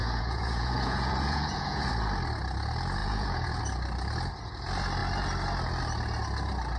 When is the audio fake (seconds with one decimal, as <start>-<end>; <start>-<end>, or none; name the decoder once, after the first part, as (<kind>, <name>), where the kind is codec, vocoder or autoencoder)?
0.0-1.9 (vocoder, Vocos); 3.0-3.6